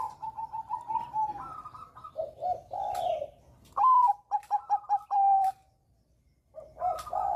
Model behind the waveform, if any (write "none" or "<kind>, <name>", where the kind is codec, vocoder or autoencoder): vocoder, BigVGAN v2